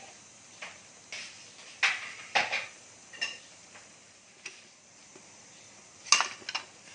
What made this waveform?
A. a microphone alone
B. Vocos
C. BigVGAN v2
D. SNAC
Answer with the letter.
A